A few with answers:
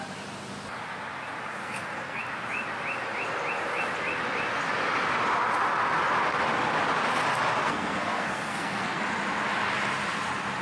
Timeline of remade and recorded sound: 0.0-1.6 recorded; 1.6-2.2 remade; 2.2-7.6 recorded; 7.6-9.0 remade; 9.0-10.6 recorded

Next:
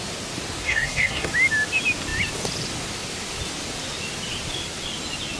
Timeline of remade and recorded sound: 0.0-0.6 recorded; 0.6-1.3 remade; 1.3-5.4 recorded

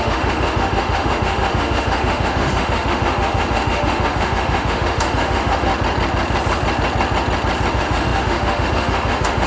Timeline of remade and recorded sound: 0.0-5.7 remade; 5.7-7.7 recorded; 7.7-9.5 remade